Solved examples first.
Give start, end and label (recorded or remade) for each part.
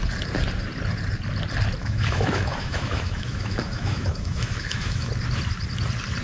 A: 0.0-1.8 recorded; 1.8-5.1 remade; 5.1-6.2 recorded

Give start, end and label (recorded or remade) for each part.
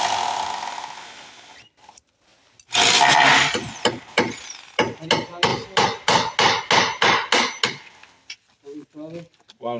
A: 0.0-9.8 recorded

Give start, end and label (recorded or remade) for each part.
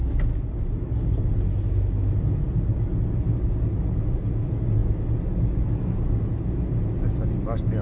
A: 0.0-7.8 recorded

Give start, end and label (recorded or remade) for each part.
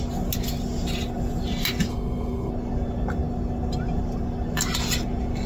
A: 0.0-1.9 recorded; 1.9-2.5 remade; 2.5-5.5 recorded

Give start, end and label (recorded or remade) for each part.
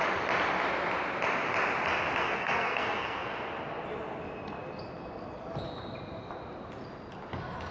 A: 0.0-2.2 recorded; 2.2-3.5 remade; 3.5-7.7 recorded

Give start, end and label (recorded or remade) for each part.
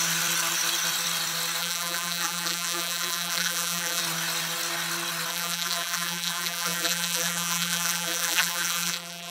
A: 0.0-1.6 recorded; 1.6-4.0 remade; 4.0-5.3 recorded; 5.3-9.3 remade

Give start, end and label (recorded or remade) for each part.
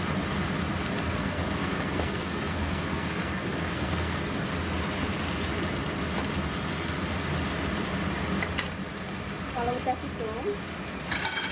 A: 0.0-1.0 recorded; 1.0-4.5 remade; 4.5-11.5 recorded